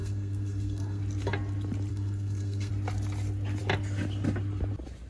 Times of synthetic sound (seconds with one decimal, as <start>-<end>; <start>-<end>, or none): 0.0-1.0; 1.9-2.7